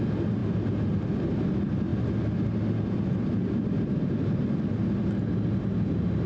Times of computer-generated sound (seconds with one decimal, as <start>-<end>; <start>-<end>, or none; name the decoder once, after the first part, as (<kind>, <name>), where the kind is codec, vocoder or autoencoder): none